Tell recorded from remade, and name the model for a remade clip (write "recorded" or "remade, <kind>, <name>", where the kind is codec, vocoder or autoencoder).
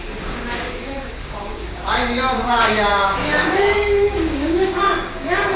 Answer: remade, codec, DAC